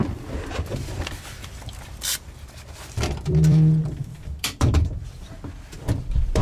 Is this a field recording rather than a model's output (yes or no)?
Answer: no